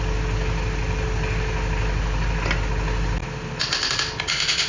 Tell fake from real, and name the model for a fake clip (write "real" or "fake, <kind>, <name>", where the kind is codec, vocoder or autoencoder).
real